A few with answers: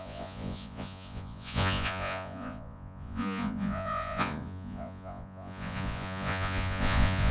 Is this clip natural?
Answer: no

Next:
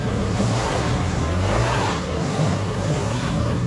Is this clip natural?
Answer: no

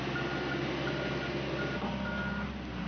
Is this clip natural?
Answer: yes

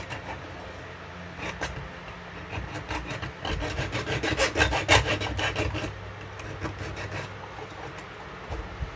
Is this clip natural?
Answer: yes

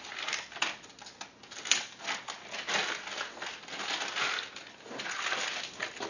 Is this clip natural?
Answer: yes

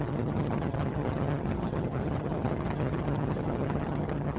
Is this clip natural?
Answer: no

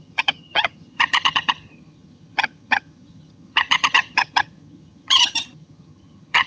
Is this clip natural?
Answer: no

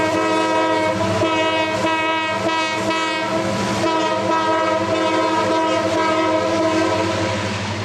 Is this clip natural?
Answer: yes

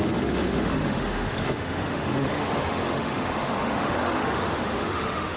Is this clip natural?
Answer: no